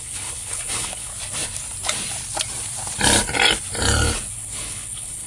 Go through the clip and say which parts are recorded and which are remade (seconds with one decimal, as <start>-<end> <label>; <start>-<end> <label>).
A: 0.0-1.1 remade; 1.1-4.3 recorded; 4.3-5.3 remade